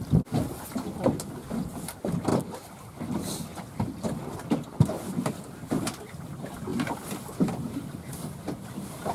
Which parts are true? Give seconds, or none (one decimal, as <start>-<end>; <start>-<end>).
0.0-9.1